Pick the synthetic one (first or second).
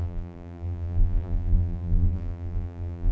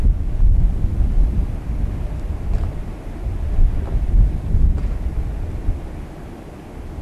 first